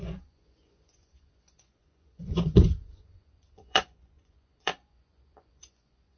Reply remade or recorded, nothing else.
remade